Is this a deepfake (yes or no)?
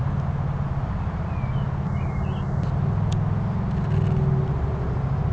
no